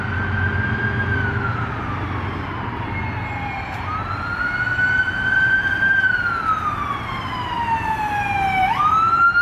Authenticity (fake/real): real